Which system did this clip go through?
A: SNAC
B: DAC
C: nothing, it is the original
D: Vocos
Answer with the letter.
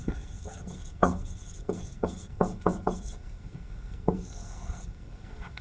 A